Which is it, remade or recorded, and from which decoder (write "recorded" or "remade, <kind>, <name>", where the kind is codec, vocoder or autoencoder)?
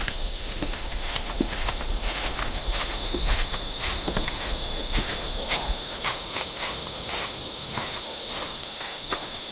remade, autoencoder, DAC-VAE